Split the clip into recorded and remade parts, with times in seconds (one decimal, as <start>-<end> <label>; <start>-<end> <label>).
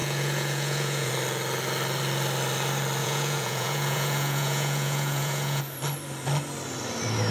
0.0-1.1 remade; 1.1-3.0 recorded; 3.0-5.6 remade; 5.6-7.3 recorded